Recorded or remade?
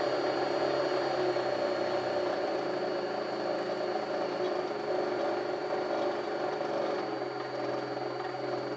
recorded